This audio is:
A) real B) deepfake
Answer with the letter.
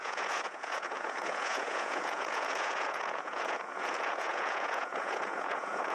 B